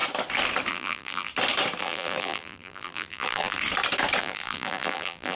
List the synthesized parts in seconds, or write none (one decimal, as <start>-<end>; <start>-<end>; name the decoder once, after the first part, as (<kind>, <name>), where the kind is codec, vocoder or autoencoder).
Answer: 0.7-1.3 (vocoder, BigVGAN v2); 1.8-3.6; 4.2-5.4